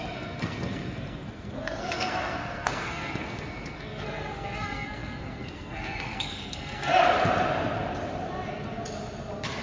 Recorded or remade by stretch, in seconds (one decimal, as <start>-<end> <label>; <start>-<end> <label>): 0.0-6.9 remade; 6.9-9.6 recorded